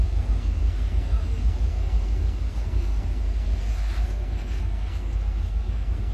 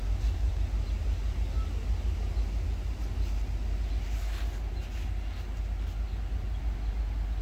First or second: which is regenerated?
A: first